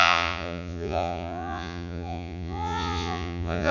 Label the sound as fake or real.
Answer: fake